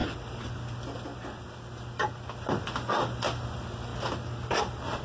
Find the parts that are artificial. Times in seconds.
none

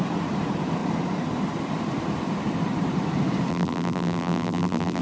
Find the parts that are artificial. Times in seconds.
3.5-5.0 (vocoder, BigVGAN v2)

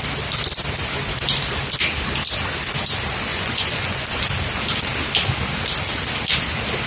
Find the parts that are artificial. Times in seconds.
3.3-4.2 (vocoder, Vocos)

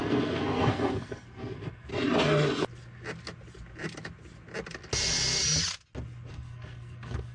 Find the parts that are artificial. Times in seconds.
0.0-1.9 (codec, SNAC); 6.3-7.3

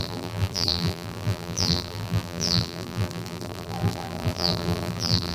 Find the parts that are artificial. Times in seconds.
0.0-5.3 (vocoder, BigVGAN v2)